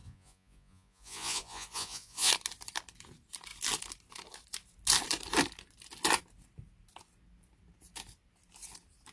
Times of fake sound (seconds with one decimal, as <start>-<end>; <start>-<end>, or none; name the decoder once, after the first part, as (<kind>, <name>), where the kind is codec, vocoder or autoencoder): 0.0-2.3 (vocoder, Vocos)